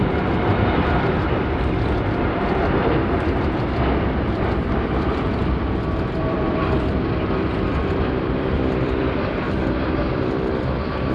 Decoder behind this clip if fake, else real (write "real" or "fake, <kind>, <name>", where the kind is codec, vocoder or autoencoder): fake, vocoder, BigVGAN v2